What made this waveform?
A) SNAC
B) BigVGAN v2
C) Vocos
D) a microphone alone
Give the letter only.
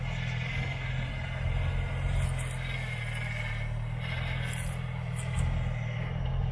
D